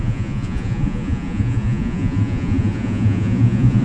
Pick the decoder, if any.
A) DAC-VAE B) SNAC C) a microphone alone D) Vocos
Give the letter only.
D